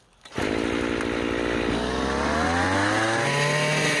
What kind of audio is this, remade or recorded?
recorded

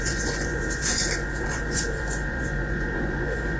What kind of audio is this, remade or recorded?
remade